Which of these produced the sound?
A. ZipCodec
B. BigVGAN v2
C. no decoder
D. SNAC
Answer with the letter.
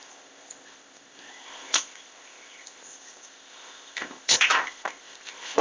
A